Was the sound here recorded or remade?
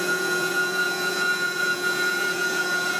remade